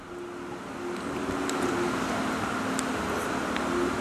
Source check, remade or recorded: recorded